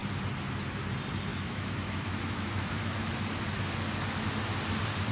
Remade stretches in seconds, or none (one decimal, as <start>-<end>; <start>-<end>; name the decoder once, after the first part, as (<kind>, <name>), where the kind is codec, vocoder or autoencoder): 1.3-3.1 (autoencoder, DAC-VAE)